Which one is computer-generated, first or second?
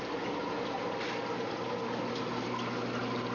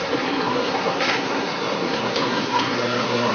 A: second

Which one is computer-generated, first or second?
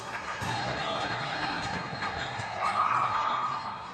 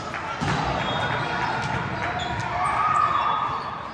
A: first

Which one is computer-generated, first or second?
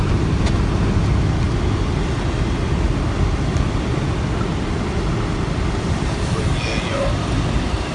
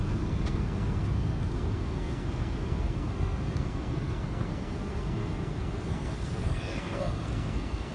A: second